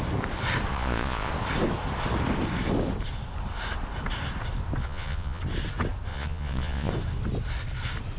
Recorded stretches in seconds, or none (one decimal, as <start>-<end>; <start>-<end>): 0.0-0.7; 1.3-4.8; 5.4-6.1; 6.9-8.2